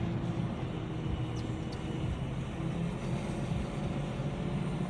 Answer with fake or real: real